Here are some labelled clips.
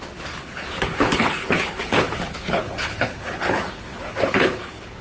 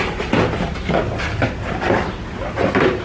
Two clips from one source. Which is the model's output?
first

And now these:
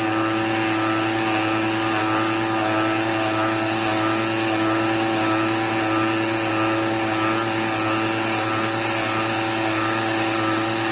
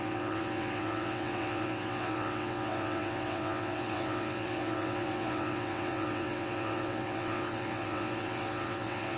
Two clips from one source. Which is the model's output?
second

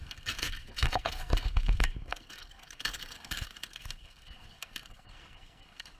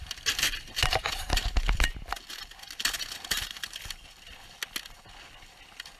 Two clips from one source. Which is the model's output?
first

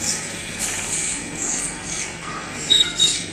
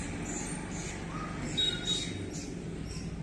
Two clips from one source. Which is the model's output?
first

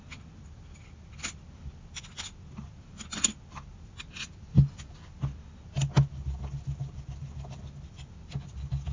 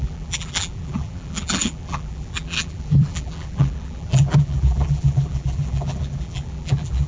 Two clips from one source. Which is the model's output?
second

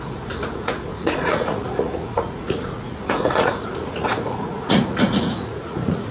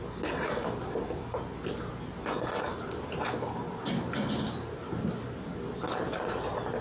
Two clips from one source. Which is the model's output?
first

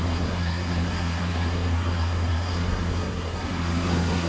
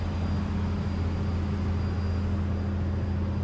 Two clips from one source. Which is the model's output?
first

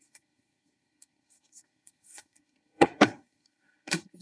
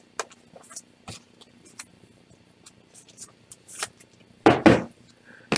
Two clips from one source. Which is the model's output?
first